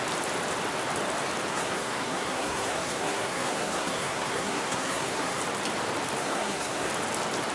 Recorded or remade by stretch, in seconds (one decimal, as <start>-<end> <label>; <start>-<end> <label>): 0.0-1.5 recorded; 1.5-5.4 remade; 5.4-6.2 recorded; 6.2-6.9 remade; 6.9-7.5 recorded

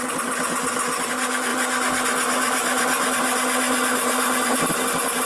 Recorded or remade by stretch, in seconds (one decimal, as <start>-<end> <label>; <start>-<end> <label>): 0.0-5.3 recorded

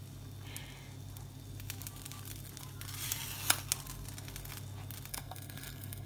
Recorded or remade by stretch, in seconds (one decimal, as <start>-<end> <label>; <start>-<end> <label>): 0.0-5.1 recorded; 5.1-6.1 remade

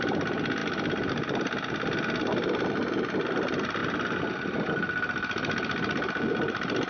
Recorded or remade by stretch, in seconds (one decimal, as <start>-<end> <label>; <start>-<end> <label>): 0.0-6.9 recorded

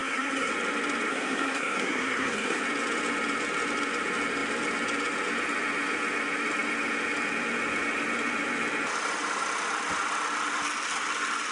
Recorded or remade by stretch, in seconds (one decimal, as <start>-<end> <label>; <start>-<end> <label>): 0.0-0.5 remade; 0.5-1.1 recorded; 1.1-2.6 remade; 2.6-11.5 recorded

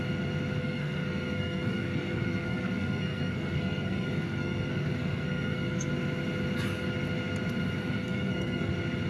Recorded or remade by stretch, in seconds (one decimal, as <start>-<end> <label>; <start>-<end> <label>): 0.0-0.6 recorded; 0.6-5.9 remade; 5.9-7.8 recorded; 7.8-8.7 remade; 8.7-9.1 recorded

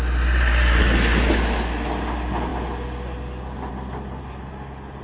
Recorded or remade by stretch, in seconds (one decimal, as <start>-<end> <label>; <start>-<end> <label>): 0.0-5.0 recorded

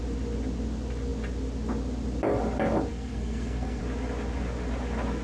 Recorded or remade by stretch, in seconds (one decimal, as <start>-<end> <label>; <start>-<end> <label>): 0.0-2.9 recorded; 2.9-3.8 remade; 3.8-5.2 recorded